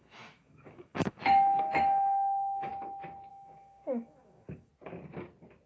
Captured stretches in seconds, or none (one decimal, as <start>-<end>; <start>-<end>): 2.7-3.3; 4.7-5.7